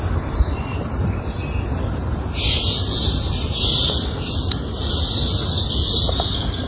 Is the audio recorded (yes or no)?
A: yes